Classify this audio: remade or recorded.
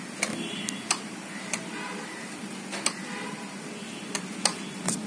recorded